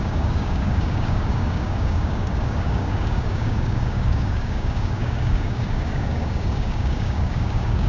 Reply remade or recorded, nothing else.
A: remade